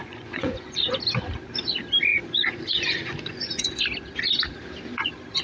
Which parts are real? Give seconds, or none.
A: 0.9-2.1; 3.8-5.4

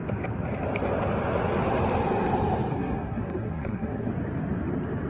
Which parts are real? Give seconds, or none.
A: 0.0-2.7; 4.1-5.1

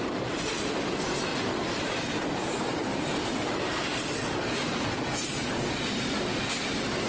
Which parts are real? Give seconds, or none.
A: 3.8-5.2

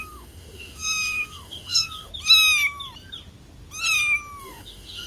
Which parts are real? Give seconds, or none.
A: 2.1-4.4

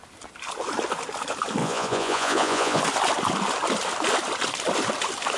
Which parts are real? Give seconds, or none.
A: 0.0-1.6; 2.8-5.4